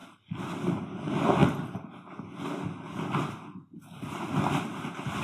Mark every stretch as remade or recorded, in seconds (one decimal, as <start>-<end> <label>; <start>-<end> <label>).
0.0-5.2 recorded